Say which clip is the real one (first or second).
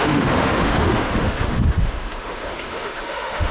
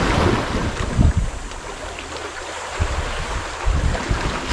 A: second